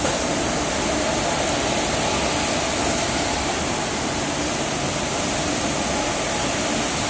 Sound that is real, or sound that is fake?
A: real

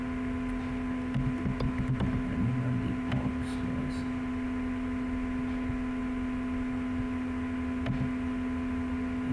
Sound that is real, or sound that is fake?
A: real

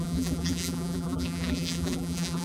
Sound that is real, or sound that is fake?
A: fake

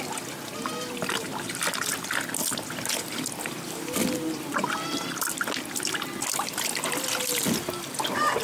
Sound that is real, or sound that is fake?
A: real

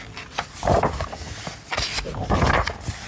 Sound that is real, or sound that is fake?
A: real